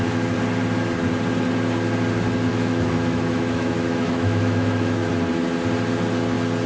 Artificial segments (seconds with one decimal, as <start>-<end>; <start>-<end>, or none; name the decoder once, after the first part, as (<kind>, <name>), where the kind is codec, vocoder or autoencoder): 2.5-5.1 (autoencoder, DAC-VAE)